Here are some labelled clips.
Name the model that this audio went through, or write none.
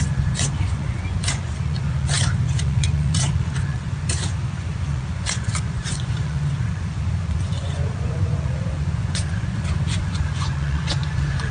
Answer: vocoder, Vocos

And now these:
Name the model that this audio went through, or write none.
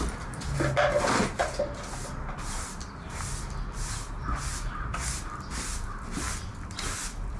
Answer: none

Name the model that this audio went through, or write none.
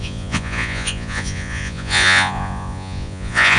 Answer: vocoder, Vocos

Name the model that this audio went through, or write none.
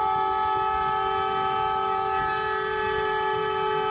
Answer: none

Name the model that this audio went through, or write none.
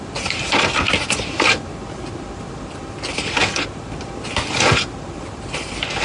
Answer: none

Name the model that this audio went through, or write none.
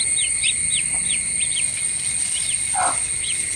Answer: none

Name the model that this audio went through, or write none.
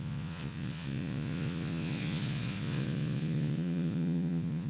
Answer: vocoder, Vocos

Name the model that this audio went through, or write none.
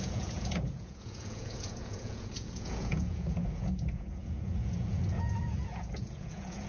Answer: vocoder, Vocos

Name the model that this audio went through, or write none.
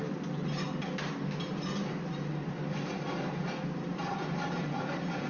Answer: none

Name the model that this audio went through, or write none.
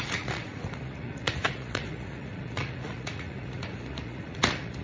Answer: vocoder, Vocos